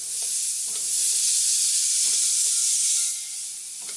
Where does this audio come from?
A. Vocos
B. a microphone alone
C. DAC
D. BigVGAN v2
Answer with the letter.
B